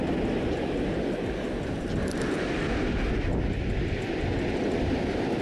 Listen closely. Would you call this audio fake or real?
real